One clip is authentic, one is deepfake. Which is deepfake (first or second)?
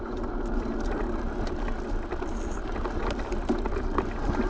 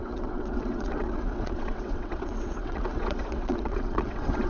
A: second